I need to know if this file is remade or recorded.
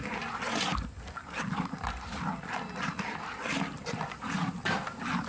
recorded